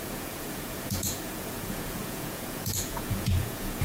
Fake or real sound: fake